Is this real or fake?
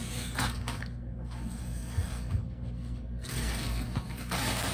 fake